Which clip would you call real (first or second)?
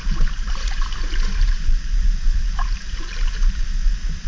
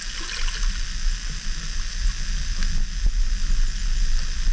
second